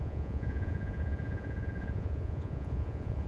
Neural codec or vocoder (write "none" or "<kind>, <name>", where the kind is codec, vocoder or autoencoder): vocoder, Vocos